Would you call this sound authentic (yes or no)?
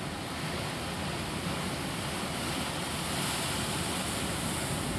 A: yes